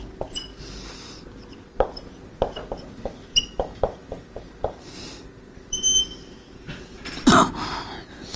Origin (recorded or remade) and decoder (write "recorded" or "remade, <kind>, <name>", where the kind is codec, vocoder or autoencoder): recorded